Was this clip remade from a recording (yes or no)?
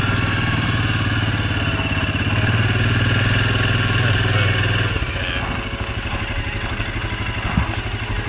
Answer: no